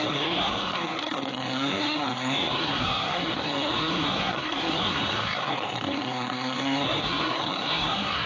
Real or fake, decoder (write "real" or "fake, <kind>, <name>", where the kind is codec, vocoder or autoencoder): fake, codec, SNAC